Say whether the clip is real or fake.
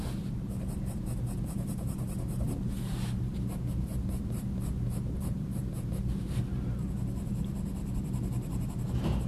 fake